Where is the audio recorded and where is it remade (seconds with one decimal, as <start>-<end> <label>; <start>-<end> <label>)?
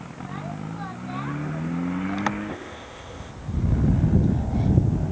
0.0-2.5 recorded; 2.5-3.3 remade; 3.3-5.1 recorded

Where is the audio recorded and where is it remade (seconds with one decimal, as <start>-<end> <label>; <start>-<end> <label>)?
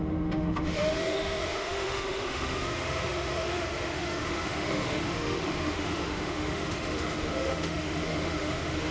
0.0-8.9 remade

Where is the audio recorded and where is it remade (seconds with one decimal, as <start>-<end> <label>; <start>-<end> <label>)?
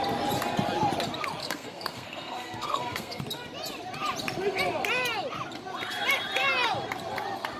0.0-1.4 recorded; 1.4-3.2 remade; 3.2-7.6 recorded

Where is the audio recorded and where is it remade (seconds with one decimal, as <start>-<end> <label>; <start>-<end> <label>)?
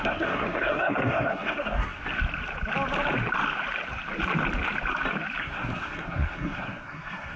0.0-2.0 remade; 2.0-5.4 recorded; 5.4-7.4 remade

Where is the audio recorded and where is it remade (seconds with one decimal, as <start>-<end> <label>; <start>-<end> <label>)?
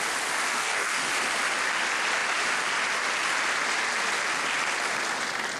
0.0-0.5 recorded; 0.5-1.1 remade; 1.1-5.6 recorded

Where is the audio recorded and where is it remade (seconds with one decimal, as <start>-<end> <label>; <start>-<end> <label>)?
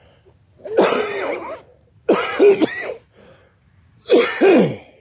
0.0-1.7 recorded; 1.7-4.3 remade; 4.3-5.0 recorded